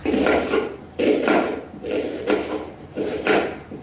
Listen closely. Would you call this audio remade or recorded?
recorded